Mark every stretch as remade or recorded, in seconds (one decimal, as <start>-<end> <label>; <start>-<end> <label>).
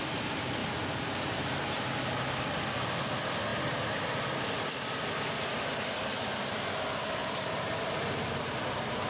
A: 0.0-0.6 recorded; 0.6-1.9 remade; 1.9-7.2 recorded; 7.2-9.1 remade